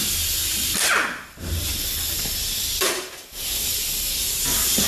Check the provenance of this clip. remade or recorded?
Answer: recorded